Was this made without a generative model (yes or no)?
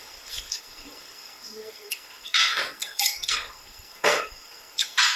no